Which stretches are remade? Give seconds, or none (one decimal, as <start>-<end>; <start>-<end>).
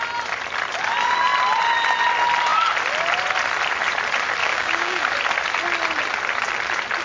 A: 4.4-5.0